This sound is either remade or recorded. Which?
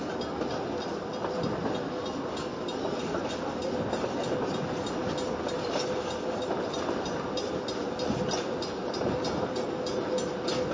recorded